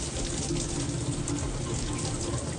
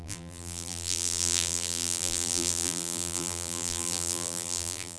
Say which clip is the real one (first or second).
first